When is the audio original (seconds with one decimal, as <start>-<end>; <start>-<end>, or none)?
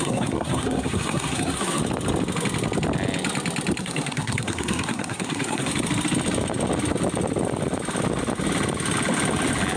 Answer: 1.8-3.8; 5.7-9.8